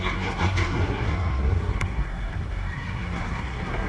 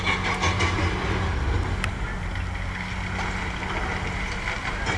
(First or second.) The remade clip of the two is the first